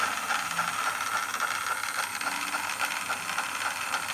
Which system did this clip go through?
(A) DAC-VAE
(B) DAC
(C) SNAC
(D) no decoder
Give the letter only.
D